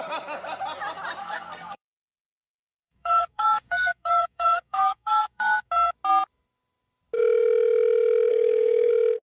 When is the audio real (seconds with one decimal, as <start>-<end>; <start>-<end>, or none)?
0.0-1.2; 5.7-8.3; 8.9-9.3

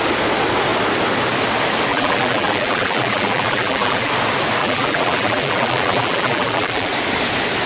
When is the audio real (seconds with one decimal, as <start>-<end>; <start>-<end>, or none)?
0.0-1.9; 4.1-4.6; 6.9-7.7

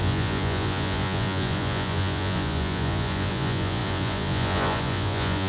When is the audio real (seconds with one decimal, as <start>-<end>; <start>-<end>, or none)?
none

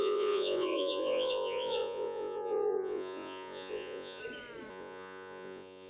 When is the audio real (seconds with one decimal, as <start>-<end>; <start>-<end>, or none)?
4.2-4.7

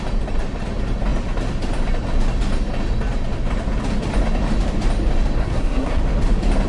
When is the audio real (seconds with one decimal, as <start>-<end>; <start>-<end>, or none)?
0.0-5.4; 6.0-6.7

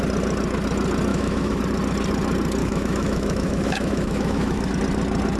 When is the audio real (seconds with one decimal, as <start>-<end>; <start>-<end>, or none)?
0.0-1.1; 1.6-2.6; 4.7-5.4